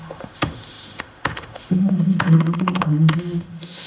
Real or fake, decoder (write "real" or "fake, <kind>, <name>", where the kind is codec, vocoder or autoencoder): fake, autoencoder, DAC-VAE